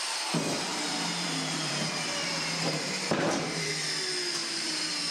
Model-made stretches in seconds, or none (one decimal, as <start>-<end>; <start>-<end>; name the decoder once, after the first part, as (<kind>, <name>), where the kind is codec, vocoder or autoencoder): 0.7-1.7 (vocoder, BigVGAN v2); 2.3-3.7; 4.4-5.1